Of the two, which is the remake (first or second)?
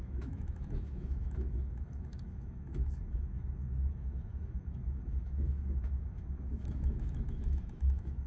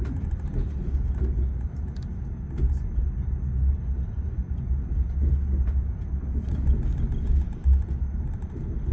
first